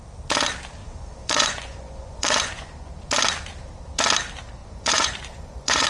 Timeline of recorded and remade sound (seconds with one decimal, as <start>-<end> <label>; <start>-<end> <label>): 0.0-0.8 recorded; 0.8-2.9 remade; 2.9-4.6 recorded; 4.6-5.9 remade